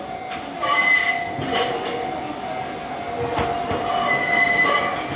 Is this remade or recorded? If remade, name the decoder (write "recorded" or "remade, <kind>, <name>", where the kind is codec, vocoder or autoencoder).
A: recorded